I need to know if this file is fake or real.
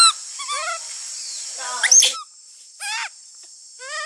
real